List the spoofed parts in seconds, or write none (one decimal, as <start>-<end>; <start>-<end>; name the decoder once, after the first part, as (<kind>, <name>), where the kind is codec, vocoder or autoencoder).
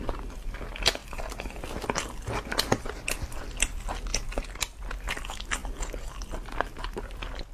none